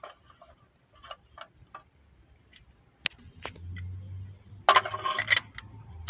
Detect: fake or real real